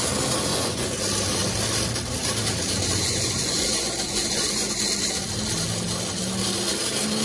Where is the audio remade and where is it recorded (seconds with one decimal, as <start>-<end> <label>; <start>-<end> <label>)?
0.0-0.5 recorded; 0.5-1.0 remade; 1.0-3.0 recorded; 3.0-4.8 remade; 4.8-7.2 recorded